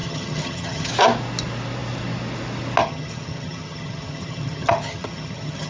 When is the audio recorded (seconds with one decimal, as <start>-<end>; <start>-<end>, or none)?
0.9-2.8